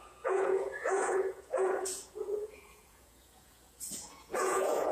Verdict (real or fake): fake